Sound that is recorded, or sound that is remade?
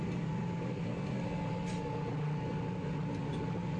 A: recorded